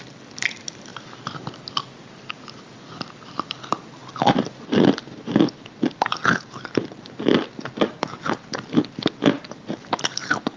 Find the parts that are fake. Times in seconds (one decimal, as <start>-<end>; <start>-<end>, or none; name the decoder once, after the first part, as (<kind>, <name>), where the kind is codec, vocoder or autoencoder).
none